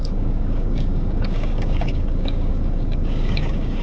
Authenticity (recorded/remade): remade